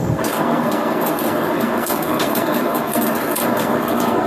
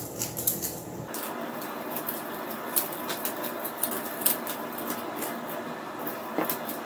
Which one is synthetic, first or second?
first